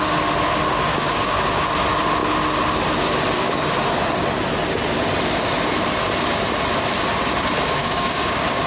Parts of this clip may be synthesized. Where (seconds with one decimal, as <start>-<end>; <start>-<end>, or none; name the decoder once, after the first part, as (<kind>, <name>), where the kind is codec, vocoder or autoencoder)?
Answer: 0.9-1.4 (codec, DAC); 7.8-8.7